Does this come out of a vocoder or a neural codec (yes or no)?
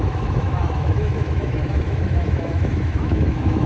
yes